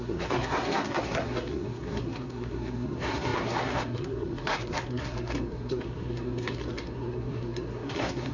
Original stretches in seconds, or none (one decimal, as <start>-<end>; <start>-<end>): none